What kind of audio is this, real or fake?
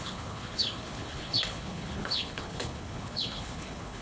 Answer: fake